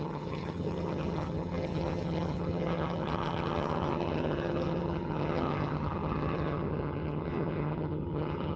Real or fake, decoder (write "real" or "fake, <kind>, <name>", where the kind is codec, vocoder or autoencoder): fake, vocoder, HiFi-GAN